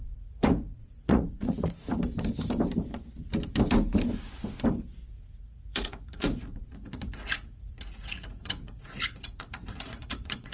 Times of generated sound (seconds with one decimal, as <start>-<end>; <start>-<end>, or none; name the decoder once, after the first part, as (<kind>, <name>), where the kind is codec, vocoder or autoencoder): 0.0-1.9 (vocoder, Vocos); 5.1-10.5